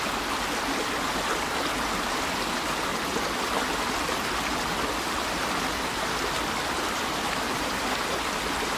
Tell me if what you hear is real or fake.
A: real